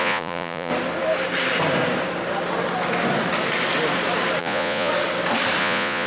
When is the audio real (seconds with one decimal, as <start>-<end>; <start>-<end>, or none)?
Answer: 0.7-4.4; 4.9-5.6

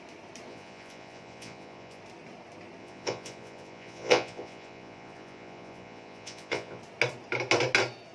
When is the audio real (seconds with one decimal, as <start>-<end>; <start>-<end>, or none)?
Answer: 0.0-0.5; 2.0-2.8; 6.8-8.1

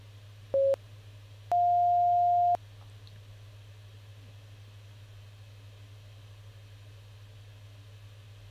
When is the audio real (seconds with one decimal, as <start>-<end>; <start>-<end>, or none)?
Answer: 0.0-8.5

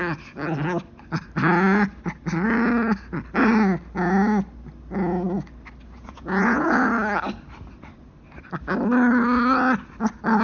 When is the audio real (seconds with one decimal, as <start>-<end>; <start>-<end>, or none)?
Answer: 0.0-6.0; 6.7-10.4

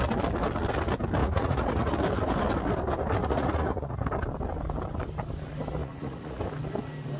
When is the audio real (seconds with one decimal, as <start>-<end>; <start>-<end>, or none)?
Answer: 0.0-1.2; 2.0-3.2; 4.0-5.8; 6.4-7.2